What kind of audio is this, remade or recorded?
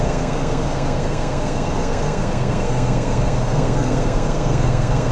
remade